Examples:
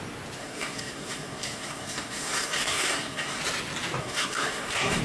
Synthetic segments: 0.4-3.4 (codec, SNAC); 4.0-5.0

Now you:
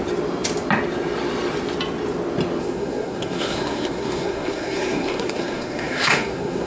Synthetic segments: 2.6-6.7 (codec, SNAC)

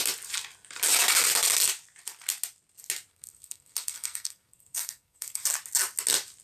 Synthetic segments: 3.1-5.4 (codec, SNAC)

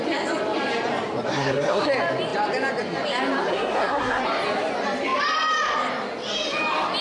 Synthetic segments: 1.3-1.9 (codec, SNAC); 3.5-4.2

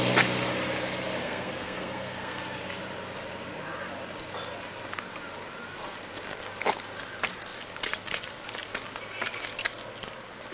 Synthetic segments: 1.2-2.4 (codec, SNAC)